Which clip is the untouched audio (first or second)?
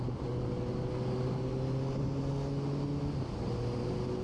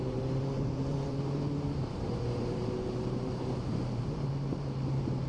first